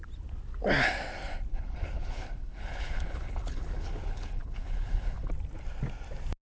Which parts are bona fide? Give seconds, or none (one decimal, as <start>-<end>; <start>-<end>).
0.0-1.5; 5.3-6.4